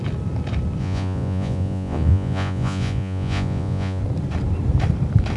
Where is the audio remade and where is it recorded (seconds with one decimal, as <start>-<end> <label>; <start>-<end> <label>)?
0.0-0.8 recorded; 0.8-4.0 remade; 4.0-5.4 recorded